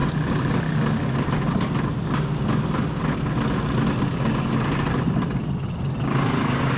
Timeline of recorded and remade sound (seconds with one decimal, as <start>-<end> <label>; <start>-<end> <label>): 0.0-6.8 recorded